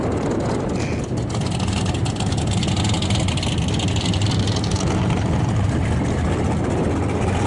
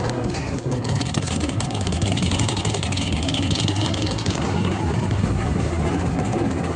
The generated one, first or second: second